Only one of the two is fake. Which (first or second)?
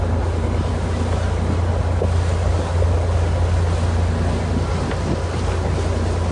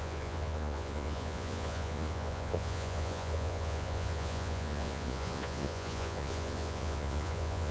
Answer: second